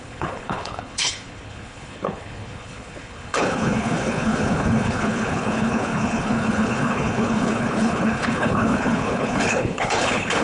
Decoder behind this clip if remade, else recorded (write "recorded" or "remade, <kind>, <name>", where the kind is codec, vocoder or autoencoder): remade, codec, HILCodec